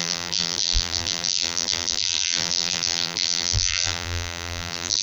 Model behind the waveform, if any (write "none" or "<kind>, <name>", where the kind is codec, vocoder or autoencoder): vocoder, BigVGAN v2